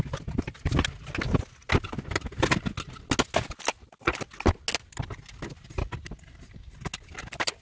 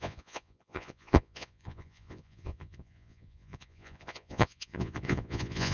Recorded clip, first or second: first